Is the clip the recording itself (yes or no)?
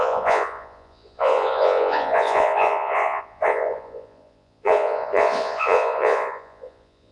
no